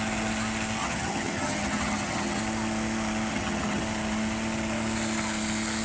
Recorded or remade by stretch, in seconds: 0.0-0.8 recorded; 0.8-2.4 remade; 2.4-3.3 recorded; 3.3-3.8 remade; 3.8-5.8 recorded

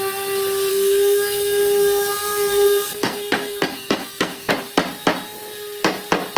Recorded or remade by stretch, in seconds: 0.0-0.7 recorded; 0.7-4.5 remade; 4.5-6.4 recorded

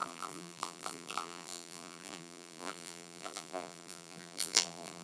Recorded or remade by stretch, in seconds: 0.0-5.0 remade

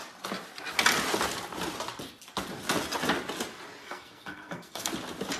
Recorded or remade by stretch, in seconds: 0.0-3.8 recorded; 3.8-4.9 remade; 4.9-5.4 recorded

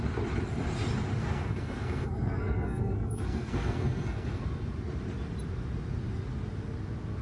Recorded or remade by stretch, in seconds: 0.0-1.2 recorded; 1.2-4.4 remade; 4.4-7.2 recorded

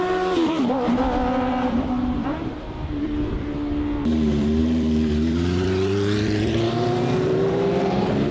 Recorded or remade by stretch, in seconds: 0.0-1.0 remade; 1.0-1.5 recorded; 1.5-8.3 remade

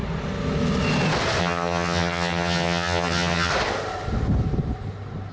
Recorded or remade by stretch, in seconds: 0.0-1.4 recorded; 1.4-3.5 remade; 3.5-5.3 recorded

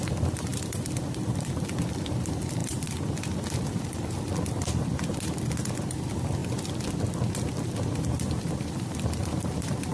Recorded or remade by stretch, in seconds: 0.0-6.4 remade; 6.4-7.1 recorded; 7.1-9.9 remade